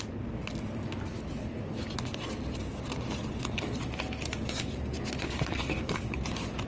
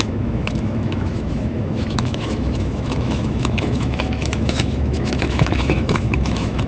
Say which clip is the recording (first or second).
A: first